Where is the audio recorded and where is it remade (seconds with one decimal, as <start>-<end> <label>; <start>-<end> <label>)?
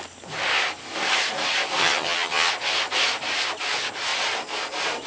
0.0-1.8 recorded; 1.8-2.5 remade; 2.5-5.1 recorded